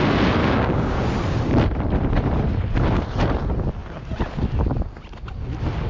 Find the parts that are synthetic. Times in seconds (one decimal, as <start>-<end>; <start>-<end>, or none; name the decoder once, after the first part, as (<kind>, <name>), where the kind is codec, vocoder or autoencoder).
0.4-1.0 (codec, DAC)